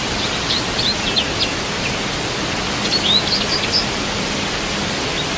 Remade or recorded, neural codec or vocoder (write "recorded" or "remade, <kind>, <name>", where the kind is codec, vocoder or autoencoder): recorded